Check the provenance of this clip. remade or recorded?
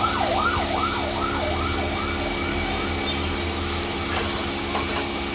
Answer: recorded